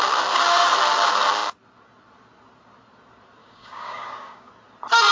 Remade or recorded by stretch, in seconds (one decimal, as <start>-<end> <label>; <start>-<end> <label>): 0.0-3.4 recorded; 3.4-4.5 remade; 4.5-5.1 recorded

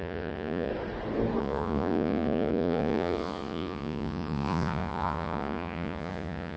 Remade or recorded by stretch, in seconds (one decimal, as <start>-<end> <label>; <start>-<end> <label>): 0.0-0.7 remade; 0.7-1.4 recorded; 1.4-6.6 remade